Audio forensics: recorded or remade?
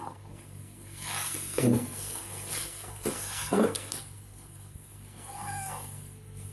remade